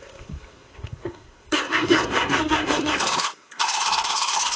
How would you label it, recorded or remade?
remade